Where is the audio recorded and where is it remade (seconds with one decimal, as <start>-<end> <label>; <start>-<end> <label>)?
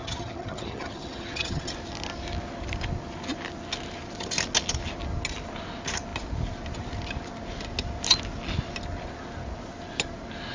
0.0-1.7 remade; 1.7-10.5 recorded